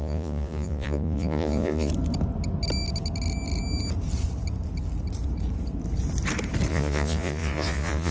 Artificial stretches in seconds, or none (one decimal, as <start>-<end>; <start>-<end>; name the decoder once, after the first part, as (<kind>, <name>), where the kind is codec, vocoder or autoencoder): 0.0-1.9 (vocoder, Vocos); 6.7-8.1